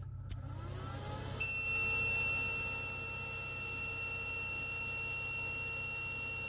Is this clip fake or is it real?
real